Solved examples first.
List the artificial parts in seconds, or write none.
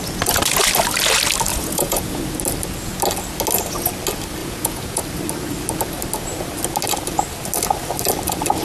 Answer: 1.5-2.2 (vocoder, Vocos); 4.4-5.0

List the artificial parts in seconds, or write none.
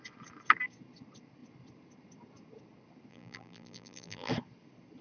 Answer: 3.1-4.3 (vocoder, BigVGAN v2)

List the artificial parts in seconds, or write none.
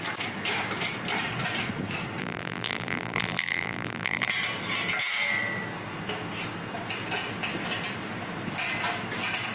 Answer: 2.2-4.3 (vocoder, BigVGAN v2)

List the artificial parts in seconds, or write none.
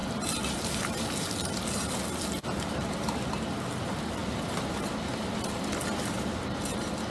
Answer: none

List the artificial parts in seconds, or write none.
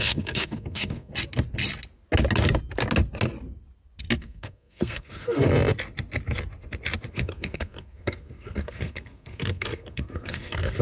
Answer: 0.0-1.1 (codec, SNAC); 4.2-5.5; 7.1-10.8